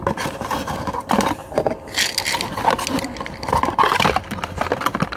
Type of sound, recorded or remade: recorded